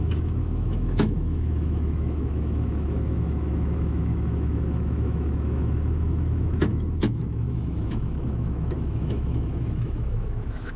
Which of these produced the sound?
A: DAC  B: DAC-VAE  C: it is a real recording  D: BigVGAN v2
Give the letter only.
B